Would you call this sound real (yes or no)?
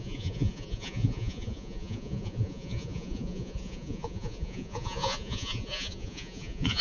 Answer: no